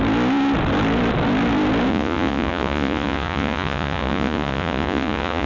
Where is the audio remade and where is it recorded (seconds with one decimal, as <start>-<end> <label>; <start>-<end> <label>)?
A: 0.0-1.9 recorded; 1.9-5.5 remade